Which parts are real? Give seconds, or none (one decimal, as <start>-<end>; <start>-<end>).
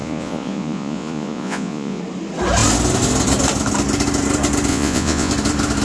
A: 2.0-4.7; 5.3-5.8